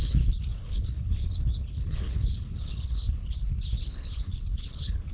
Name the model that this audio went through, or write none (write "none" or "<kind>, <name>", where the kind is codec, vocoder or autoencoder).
codec, HILCodec